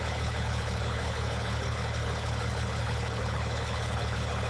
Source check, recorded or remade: remade